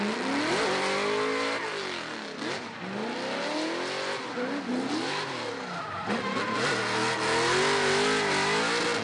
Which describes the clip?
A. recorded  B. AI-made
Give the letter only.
A